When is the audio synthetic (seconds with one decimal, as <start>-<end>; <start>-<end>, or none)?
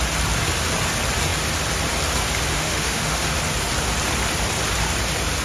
2.5-3.4